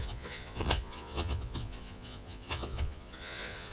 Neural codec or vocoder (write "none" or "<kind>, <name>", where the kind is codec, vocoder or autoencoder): vocoder, Vocos